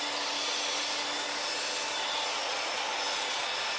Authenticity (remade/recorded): recorded